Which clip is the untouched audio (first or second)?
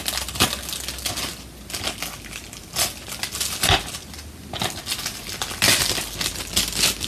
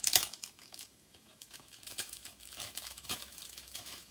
first